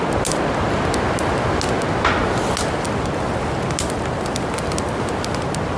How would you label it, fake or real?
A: real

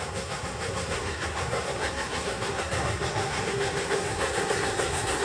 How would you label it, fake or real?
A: fake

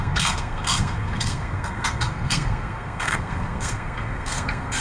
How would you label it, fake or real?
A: fake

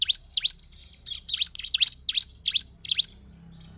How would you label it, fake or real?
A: real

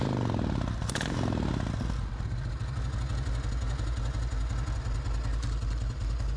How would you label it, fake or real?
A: real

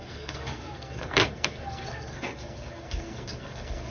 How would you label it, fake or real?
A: fake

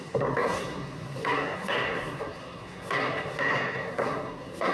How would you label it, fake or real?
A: fake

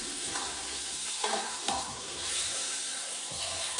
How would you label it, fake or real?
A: fake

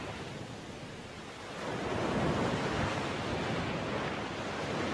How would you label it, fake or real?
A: real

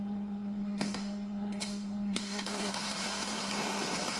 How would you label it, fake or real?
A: fake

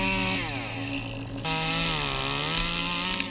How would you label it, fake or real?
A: real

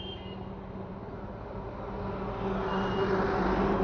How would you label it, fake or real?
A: real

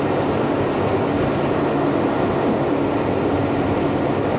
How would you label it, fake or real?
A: real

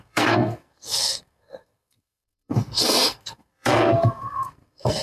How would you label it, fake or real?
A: fake